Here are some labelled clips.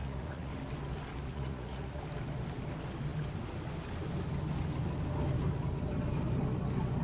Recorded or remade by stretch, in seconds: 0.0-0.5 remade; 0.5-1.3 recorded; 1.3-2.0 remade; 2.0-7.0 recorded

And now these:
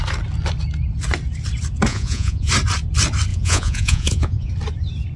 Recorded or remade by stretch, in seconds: 0.0-1.9 recorded; 1.9-2.5 remade; 2.5-3.3 recorded; 3.3-4.5 remade; 4.5-5.2 recorded

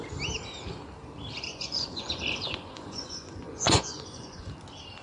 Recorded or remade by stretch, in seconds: 0.0-1.5 recorded; 1.5-4.5 remade; 4.5-5.0 recorded

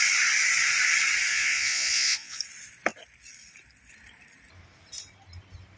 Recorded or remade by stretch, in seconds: 0.0-1.3 recorded; 1.3-2.4 remade; 2.4-5.8 recorded